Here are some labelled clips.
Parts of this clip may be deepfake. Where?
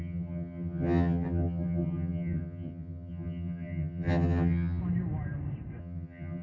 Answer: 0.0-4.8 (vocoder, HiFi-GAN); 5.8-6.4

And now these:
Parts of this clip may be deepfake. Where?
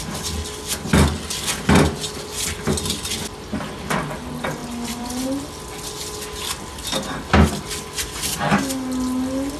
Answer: none